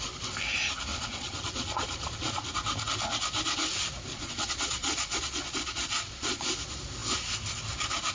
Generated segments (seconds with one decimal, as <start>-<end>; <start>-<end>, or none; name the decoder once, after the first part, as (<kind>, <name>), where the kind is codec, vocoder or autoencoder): 0.9-2.5 (vocoder, Vocos); 4.1-6.5

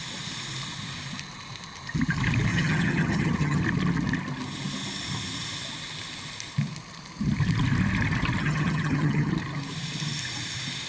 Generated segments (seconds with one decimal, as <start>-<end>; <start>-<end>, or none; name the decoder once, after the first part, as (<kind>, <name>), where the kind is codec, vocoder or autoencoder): 2.5-3.6 (vocoder, HiFi-GAN); 8.4-9.3

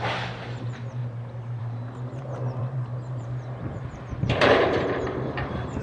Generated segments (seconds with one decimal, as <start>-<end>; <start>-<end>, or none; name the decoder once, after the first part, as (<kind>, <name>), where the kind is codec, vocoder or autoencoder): 0.0-1.0 (vocoder, BigVGAN v2); 1.6-5.8

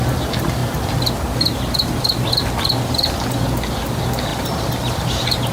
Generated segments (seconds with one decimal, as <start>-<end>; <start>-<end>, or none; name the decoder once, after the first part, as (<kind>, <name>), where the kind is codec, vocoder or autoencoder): none

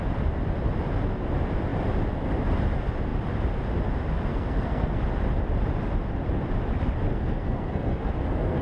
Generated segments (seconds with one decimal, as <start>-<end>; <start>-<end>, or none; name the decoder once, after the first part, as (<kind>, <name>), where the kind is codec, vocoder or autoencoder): 4.3-5.0 (codec, SNAC); 7.1-8.6

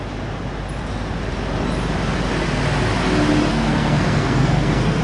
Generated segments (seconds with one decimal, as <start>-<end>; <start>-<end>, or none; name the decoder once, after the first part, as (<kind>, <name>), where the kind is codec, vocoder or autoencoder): 3.5-5.0 (codec, SNAC)